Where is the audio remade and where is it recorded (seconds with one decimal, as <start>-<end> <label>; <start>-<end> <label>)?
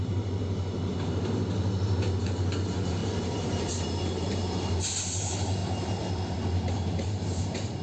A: 0.0-0.7 remade; 0.7-2.2 recorded; 2.2-5.6 remade; 5.6-6.7 recorded; 6.7-7.8 remade